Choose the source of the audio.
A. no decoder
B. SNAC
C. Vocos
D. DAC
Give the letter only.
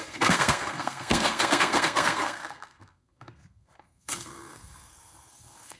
B